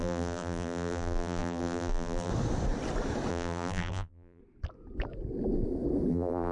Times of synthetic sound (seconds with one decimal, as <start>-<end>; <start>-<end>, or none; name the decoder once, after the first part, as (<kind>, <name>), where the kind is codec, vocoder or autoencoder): 0.0-2.3 (vocoder, BigVGAN v2); 3.3-4.4; 6.1-6.5